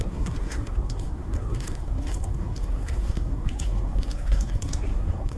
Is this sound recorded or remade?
remade